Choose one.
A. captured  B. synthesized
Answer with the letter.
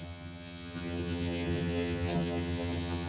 B